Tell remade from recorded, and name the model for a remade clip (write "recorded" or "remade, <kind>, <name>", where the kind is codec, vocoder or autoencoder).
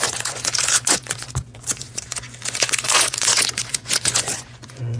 remade, vocoder, Vocos